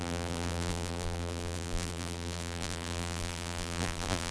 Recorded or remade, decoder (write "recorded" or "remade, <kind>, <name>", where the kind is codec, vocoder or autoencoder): remade, vocoder, BigVGAN v2